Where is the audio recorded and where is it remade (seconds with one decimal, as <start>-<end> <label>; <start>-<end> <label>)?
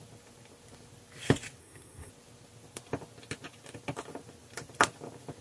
0.0-1.6 recorded; 1.6-2.1 remade; 2.1-5.4 recorded